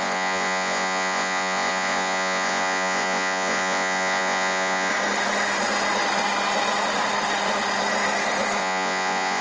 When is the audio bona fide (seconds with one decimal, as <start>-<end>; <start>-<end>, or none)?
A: 4.9-8.6